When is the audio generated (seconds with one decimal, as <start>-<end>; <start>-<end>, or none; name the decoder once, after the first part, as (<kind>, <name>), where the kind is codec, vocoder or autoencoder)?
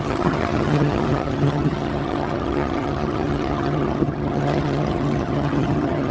0.0-6.1 (vocoder, HiFi-GAN)